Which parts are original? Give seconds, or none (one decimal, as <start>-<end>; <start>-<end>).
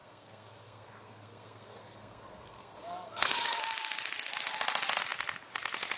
3.6-6.0